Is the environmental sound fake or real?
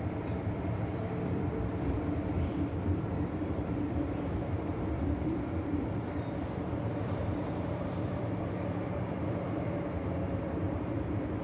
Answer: fake